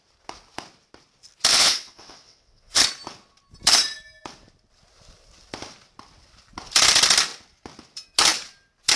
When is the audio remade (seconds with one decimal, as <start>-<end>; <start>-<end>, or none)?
1.5-2.8